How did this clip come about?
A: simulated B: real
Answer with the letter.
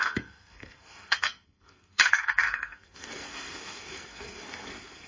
A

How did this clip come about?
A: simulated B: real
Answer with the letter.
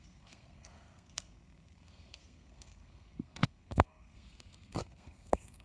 A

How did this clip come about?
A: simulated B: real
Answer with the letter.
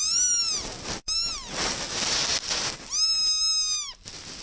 B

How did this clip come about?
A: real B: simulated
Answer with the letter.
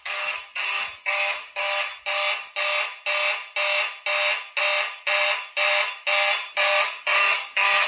A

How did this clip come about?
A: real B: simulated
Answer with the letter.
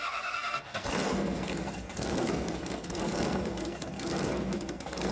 B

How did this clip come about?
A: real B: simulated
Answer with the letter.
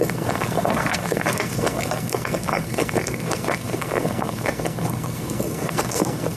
B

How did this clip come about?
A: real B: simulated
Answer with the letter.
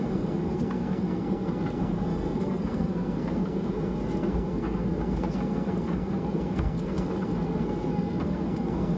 B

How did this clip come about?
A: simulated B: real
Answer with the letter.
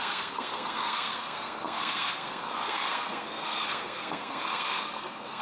A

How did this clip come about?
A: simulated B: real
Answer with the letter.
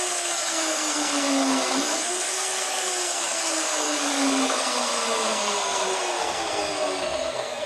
A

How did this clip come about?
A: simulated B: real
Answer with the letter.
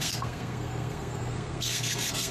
A